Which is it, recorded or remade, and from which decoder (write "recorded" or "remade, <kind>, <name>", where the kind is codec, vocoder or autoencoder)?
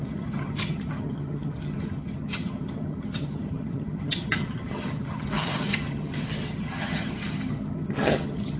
remade, vocoder, HiFi-GAN